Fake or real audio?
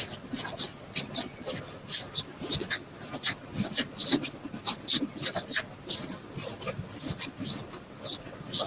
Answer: real